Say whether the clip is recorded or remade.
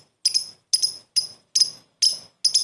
recorded